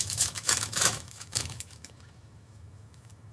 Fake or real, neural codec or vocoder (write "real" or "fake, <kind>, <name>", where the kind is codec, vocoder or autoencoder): fake, autoencoder, DAC-VAE